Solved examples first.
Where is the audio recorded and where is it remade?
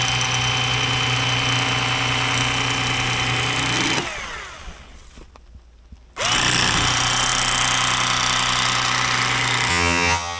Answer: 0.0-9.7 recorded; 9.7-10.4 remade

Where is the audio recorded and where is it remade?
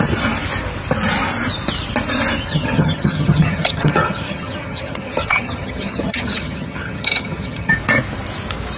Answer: 0.0-2.5 recorded; 2.5-7.7 remade; 7.7-8.8 recorded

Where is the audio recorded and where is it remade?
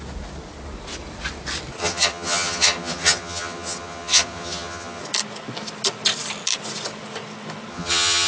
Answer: 0.0-1.8 recorded; 1.8-5.0 remade; 5.0-7.7 recorded; 7.7-8.3 remade